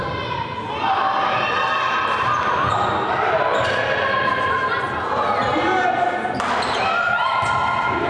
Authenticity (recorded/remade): recorded